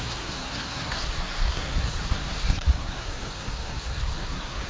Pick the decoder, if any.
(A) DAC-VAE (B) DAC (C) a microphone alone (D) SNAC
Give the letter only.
D